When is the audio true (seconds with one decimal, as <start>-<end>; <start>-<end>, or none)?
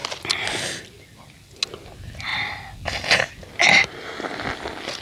0.0-5.0